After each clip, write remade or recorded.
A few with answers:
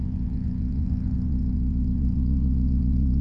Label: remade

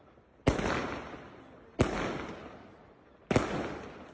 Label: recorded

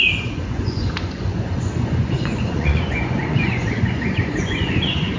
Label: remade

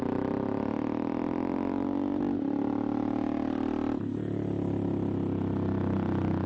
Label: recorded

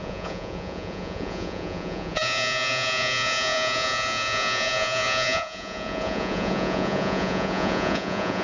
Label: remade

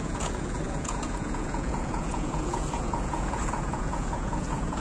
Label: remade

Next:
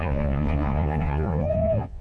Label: remade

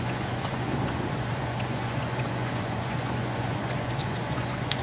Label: remade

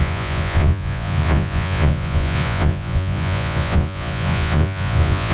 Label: remade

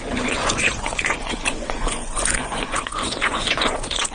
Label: remade